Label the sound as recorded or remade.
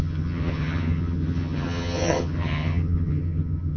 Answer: remade